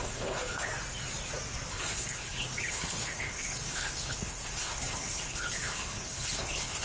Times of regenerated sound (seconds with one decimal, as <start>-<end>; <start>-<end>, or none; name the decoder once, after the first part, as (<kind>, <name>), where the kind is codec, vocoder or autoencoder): 0.0-0.7 (codec, HILCodec); 1.7-6.8